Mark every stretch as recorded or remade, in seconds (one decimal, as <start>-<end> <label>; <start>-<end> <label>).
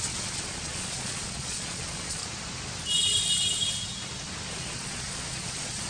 0.0-2.2 remade; 2.2-4.5 recorded; 4.5-5.9 remade